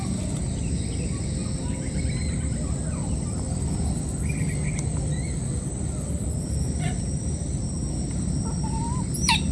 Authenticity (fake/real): real